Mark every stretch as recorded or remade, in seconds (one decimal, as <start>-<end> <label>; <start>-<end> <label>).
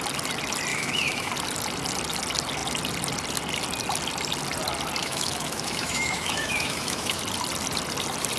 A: 0.0-0.7 recorded; 0.7-1.3 remade; 1.3-5.0 recorded; 5.0-7.2 remade; 7.2-8.4 recorded